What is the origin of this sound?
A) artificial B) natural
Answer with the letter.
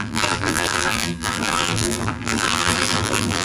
A